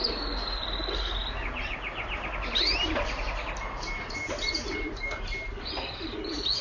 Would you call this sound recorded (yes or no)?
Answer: yes